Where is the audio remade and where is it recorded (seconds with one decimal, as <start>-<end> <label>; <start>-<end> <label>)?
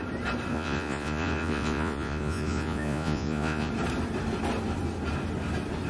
0.0-0.5 recorded; 0.5-3.7 remade; 3.7-5.9 recorded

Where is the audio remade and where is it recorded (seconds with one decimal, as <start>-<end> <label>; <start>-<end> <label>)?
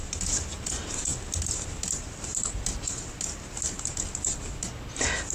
0.0-5.3 recorded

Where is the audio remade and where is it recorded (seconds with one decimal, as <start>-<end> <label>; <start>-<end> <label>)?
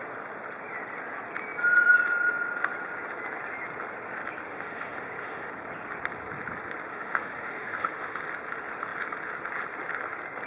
0.0-4.4 recorded; 4.4-5.5 remade; 5.5-6.9 recorded; 6.9-8.2 remade; 8.2-10.5 recorded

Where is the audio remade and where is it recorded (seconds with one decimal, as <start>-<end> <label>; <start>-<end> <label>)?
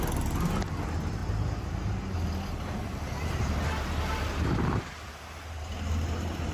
0.0-6.5 recorded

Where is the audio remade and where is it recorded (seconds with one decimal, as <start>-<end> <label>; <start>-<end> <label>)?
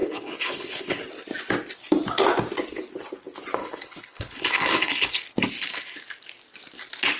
0.0-1.0 remade; 1.0-3.6 recorded; 3.6-5.2 remade; 5.2-7.2 recorded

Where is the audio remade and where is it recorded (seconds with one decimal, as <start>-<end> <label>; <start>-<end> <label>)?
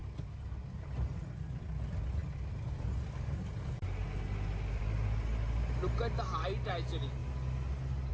0.0-8.1 recorded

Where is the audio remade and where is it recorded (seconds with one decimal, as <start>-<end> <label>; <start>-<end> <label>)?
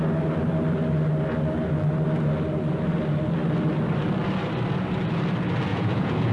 0.0-5.7 recorded; 5.7-6.3 remade